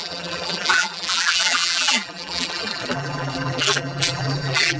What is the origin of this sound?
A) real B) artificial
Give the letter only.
B